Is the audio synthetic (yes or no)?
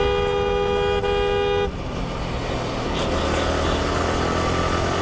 no